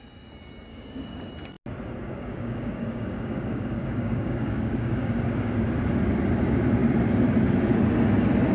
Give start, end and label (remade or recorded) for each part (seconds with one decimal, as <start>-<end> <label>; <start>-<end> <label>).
0.0-0.7 recorded; 0.7-1.3 remade; 1.3-2.1 recorded; 2.1-5.5 remade; 5.5-8.5 recorded